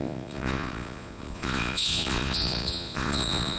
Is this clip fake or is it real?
fake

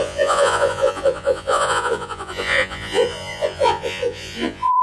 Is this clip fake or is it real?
fake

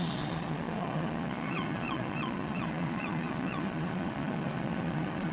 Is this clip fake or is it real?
fake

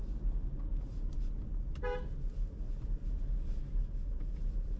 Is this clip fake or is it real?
real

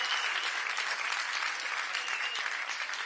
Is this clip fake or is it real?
real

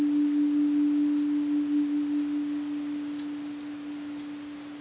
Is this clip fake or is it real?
real